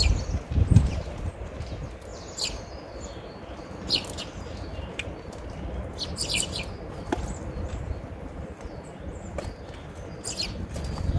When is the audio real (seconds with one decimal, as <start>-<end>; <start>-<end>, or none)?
0.0-11.2